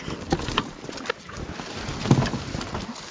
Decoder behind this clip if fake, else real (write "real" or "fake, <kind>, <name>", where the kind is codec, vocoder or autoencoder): real